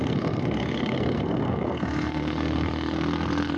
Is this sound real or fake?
fake